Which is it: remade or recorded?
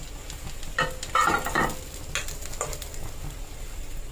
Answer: recorded